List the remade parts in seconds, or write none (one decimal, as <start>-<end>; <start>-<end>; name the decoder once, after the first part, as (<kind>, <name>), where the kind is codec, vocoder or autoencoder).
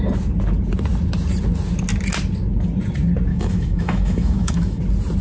3.3-4.8 (autoencoder, DAC-VAE)